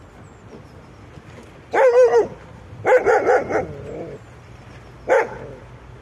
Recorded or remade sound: recorded